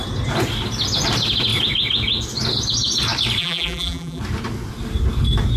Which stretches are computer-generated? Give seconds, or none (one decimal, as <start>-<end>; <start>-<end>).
3.4-4.2